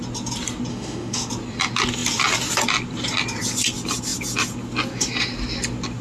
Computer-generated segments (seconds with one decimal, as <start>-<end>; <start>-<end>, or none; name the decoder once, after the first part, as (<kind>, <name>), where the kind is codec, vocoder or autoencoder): 0.7-1.3 (autoencoder, DAC-VAE)

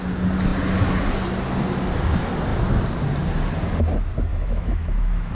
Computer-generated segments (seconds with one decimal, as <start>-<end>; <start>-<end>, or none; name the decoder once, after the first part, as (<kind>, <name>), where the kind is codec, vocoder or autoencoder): 4.3-5.3 (autoencoder, DAC-VAE)

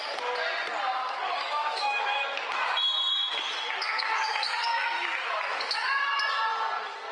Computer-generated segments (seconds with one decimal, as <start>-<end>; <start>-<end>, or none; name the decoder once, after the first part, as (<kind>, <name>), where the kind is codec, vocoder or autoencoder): 1.0-2.0 (autoencoder, DAC-VAE); 3.1-6.2

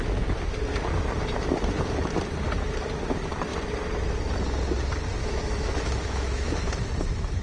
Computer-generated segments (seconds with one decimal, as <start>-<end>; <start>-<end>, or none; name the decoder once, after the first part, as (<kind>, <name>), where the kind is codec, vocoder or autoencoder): 5.2-6.7 (autoencoder, DAC-VAE)

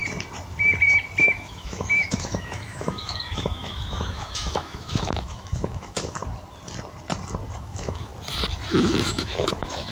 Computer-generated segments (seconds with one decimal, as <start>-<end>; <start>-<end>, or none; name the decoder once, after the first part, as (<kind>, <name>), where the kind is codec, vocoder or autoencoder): 1.2-6.2 (autoencoder, DAC-VAE); 7.6-8.1; 8.7-9.9

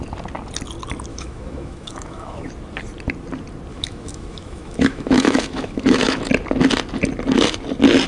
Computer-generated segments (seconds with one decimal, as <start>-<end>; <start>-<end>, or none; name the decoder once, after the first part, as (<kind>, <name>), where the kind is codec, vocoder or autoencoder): 1.1-2.5 (autoencoder, DAC-VAE); 3.7-6.2